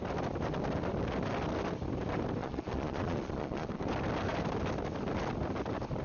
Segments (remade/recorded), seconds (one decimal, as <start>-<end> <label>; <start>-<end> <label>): 0.0-2.4 recorded; 2.4-3.8 remade; 3.8-6.0 recorded

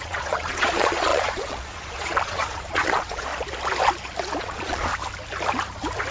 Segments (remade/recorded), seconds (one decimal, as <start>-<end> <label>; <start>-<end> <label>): 0.0-3.3 remade; 3.3-4.4 recorded; 4.4-4.9 remade; 4.9-6.1 recorded

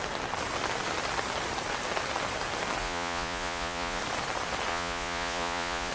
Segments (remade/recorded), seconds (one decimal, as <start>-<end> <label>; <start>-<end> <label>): 0.0-2.8 recorded; 2.8-4.0 remade; 4.0-4.7 recorded; 4.7-5.9 remade

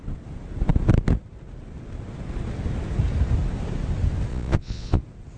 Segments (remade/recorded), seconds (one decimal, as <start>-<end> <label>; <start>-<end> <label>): 0.0-4.3 recorded; 4.3-5.0 remade; 5.0-5.4 recorded